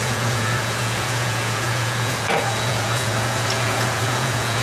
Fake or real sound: fake